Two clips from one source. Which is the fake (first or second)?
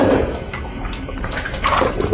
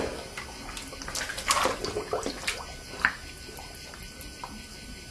first